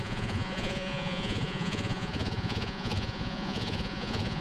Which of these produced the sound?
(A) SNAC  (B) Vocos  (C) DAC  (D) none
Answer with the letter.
B